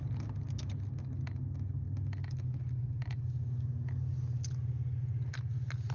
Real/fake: real